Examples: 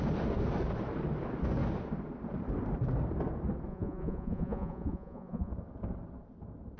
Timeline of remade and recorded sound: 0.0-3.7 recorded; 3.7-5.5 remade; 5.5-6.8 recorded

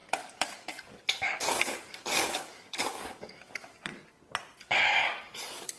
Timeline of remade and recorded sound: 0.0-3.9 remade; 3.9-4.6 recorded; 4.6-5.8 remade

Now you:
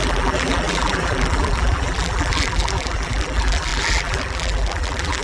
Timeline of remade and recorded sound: 0.0-5.2 remade

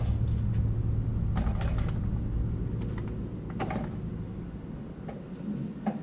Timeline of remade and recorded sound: 0.0-6.0 recorded